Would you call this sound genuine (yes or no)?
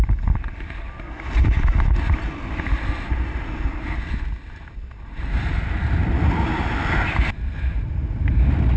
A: yes